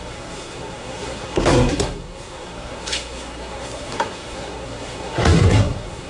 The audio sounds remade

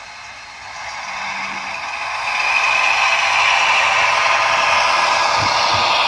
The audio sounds recorded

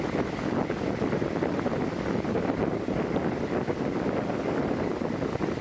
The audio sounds recorded